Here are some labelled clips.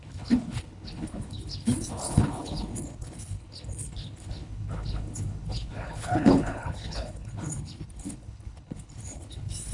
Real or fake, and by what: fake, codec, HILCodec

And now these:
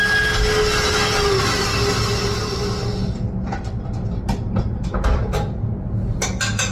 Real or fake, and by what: real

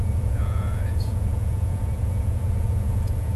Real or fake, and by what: fake, vocoder, Vocos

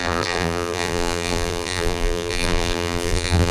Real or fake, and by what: fake, vocoder, BigVGAN v2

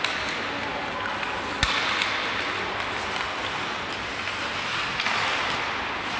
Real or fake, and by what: real